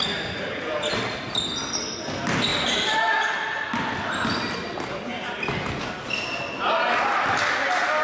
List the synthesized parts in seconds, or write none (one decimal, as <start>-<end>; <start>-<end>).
none